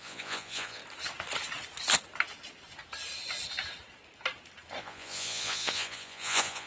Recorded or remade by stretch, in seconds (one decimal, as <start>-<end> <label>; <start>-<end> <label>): 0.0-0.8 remade; 0.8-4.8 recorded; 4.8-6.7 remade